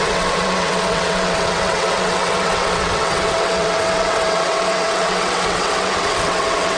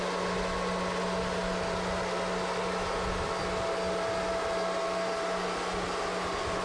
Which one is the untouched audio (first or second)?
second